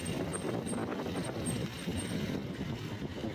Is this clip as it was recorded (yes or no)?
yes